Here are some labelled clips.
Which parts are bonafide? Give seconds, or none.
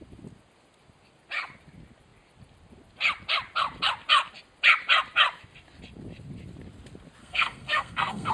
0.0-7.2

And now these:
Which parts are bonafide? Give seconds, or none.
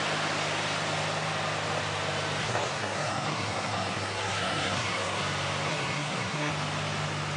0.0-2.4; 5.2-5.7; 6.5-7.4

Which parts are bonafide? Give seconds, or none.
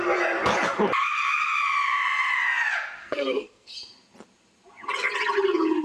0.0-3.0; 3.7-5.8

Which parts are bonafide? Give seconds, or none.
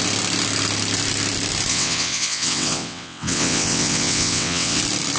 0.0-1.7; 4.8-5.2